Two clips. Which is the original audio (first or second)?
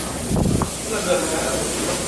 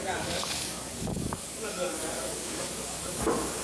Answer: first